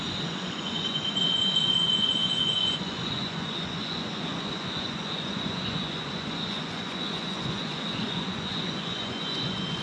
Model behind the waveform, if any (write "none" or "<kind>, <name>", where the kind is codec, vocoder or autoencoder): vocoder, Vocos